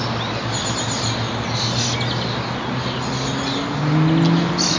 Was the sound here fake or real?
real